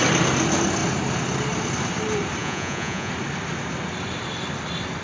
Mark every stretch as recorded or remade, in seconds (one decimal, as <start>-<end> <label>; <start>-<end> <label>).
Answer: 0.0-2.4 recorded; 2.4-3.1 remade; 3.1-5.0 recorded